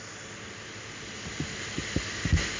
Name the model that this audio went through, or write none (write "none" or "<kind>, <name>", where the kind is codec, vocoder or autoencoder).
none